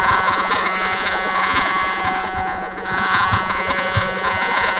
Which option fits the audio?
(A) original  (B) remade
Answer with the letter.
B